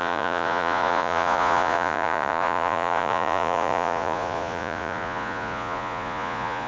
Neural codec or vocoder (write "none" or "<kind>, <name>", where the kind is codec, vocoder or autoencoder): vocoder, Vocos